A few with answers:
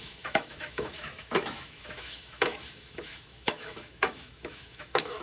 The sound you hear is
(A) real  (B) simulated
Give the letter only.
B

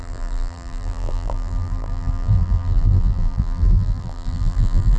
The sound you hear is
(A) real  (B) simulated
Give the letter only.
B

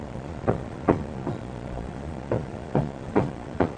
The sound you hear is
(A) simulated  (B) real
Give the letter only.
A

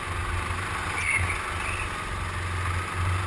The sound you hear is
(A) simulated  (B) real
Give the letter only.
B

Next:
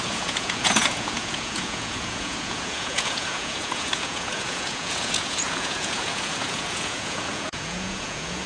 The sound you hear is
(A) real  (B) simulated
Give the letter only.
B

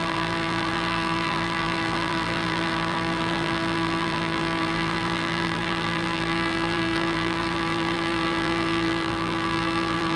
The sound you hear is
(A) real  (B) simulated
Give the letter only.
B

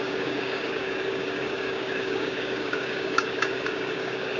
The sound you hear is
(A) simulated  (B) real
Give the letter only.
A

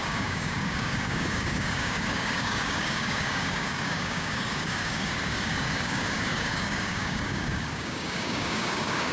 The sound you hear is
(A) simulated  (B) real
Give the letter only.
A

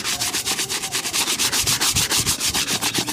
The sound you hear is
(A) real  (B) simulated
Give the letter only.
B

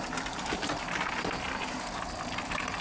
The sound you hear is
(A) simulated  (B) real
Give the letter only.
B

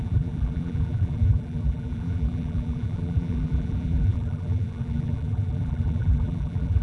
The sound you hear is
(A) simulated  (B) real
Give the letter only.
A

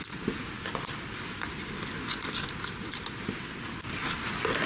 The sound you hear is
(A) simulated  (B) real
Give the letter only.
B